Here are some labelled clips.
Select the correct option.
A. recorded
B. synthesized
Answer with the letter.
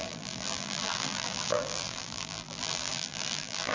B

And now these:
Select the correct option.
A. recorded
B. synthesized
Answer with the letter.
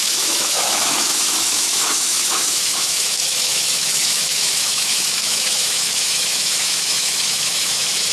B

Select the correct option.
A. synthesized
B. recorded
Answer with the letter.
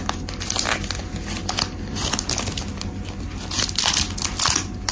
B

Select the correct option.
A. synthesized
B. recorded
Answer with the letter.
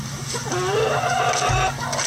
B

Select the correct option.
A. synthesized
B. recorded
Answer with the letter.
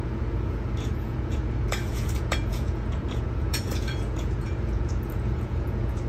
A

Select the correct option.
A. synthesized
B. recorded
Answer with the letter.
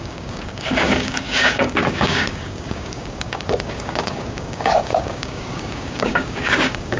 A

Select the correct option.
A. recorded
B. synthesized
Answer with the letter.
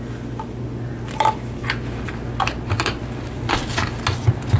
A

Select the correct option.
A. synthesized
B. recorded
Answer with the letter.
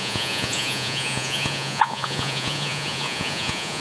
A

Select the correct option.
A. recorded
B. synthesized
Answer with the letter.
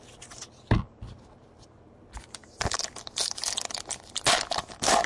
A